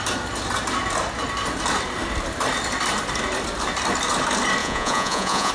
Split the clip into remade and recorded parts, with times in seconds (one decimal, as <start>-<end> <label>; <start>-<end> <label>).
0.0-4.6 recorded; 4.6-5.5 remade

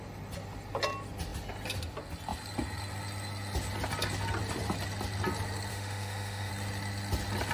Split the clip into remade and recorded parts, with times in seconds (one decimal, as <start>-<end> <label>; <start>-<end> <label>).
0.0-5.7 recorded; 5.7-6.5 remade; 6.5-7.5 recorded

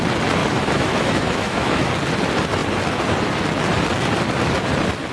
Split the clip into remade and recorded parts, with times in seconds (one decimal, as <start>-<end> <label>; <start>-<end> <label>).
0.0-0.4 recorded; 0.4-1.9 remade; 1.9-5.1 recorded

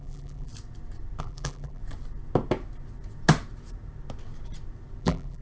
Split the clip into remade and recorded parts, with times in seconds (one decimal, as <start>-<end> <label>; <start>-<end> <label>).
0.0-0.5 remade; 0.5-1.2 recorded; 1.2-1.8 remade; 1.8-5.0 recorded; 5.0-5.4 remade

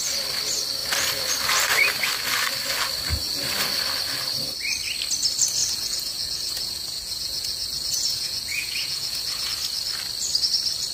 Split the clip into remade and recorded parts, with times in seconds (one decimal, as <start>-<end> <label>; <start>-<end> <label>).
0.0-5.6 recorded; 5.6-9.5 remade; 9.5-10.9 recorded

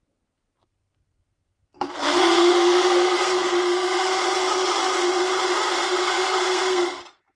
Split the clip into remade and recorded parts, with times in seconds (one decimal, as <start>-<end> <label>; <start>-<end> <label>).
0.0-0.6 recorded; 0.6-4.1 remade; 4.1-6.0 recorded; 6.0-7.0 remade; 7.0-7.4 recorded